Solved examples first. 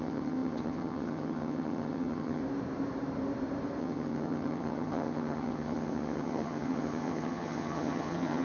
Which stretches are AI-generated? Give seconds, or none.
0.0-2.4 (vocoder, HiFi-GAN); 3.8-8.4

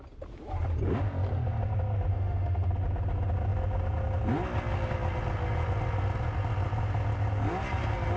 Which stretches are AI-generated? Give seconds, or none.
2.1-2.7 (autoencoder, DAC-VAE)

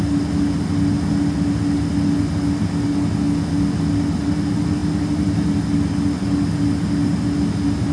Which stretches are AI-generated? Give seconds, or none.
none

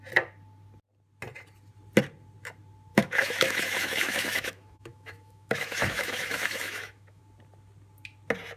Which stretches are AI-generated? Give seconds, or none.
2.9-7.2 (autoencoder, DAC-VAE)

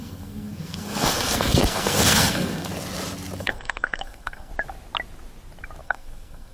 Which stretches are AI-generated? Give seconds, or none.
0.0-2.7 (codec, SNAC); 3.4-4.5; 5.8-6.5

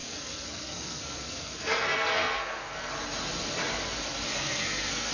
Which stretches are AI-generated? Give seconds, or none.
0.0-2.9 (codec, SNAC); 4.3-5.1